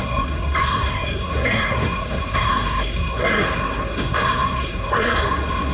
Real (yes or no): no